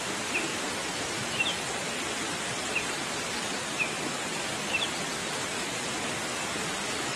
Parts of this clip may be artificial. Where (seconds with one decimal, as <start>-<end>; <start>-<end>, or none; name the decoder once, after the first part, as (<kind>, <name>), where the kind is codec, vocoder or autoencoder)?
5.2-6.1 (vocoder, BigVGAN v2)